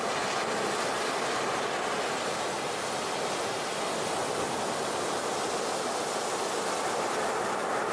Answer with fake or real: real